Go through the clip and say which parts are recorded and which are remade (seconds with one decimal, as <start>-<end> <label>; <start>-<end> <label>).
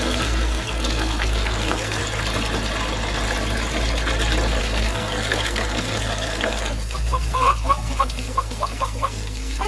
0.0-2.0 remade; 2.0-4.6 recorded; 4.6-9.7 remade